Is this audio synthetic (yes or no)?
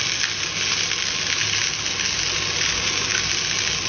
no